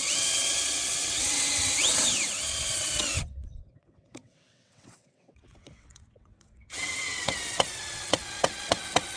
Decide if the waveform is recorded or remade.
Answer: remade